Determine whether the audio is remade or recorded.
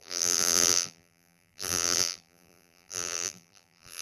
remade